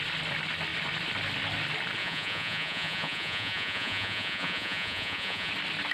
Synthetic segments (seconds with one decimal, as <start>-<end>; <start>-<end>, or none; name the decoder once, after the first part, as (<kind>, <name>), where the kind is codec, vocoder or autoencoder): 2.0-5.5 (vocoder, Vocos)